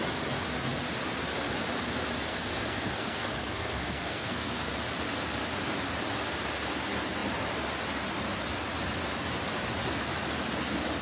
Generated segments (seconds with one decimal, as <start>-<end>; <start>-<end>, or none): 2.3-4.7